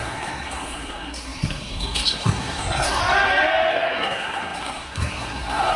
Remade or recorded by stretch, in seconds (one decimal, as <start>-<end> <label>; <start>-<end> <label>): 0.0-3.0 remade; 3.0-3.7 recorded; 3.7-5.8 remade